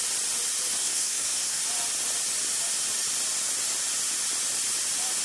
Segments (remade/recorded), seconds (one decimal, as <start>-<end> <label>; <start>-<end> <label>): 0.0-0.8 recorded; 0.8-1.6 remade; 1.6-5.2 recorded